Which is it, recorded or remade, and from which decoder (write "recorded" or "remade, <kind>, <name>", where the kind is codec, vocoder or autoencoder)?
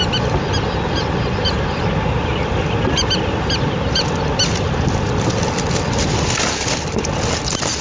recorded